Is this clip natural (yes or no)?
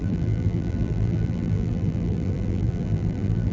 no